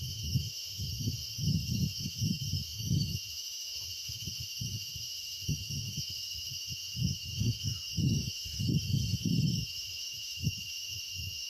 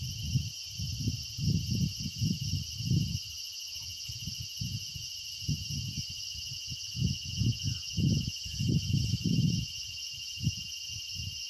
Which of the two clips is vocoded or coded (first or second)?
first